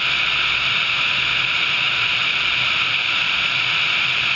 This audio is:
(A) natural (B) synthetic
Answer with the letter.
A